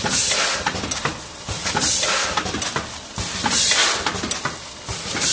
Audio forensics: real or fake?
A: real